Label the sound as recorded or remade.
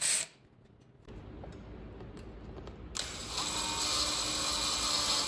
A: recorded